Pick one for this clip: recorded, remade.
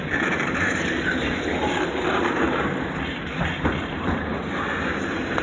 remade